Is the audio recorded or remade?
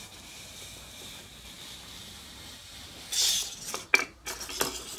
recorded